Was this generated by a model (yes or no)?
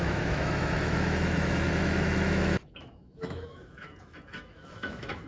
yes